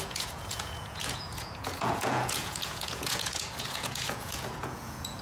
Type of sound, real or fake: fake